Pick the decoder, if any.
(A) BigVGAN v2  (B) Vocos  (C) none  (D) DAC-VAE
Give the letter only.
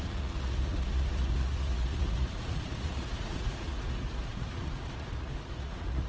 B